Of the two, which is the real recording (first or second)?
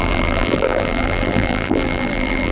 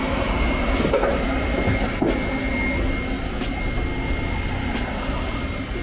second